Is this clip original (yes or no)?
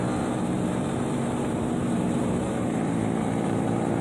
no